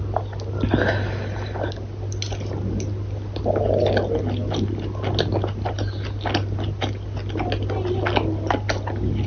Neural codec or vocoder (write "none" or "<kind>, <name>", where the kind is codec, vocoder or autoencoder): none